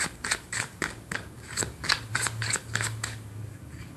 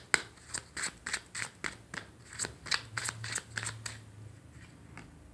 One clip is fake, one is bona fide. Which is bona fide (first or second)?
second